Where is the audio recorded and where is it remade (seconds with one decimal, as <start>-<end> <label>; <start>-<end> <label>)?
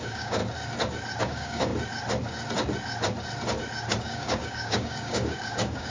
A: 0.0-0.4 remade; 0.4-1.2 recorded; 1.2-1.7 remade; 1.7-4.0 recorded; 4.0-5.9 remade